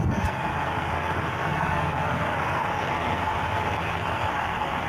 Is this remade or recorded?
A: remade